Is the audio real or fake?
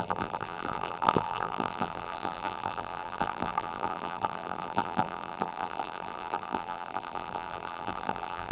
fake